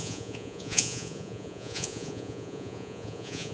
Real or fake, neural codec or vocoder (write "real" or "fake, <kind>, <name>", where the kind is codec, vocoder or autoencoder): fake, vocoder, Vocos